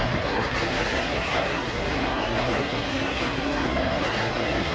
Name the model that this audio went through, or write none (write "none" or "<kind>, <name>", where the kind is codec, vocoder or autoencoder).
codec, SNAC